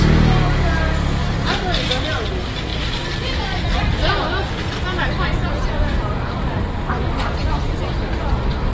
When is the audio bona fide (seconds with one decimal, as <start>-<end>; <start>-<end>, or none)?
0.0-8.7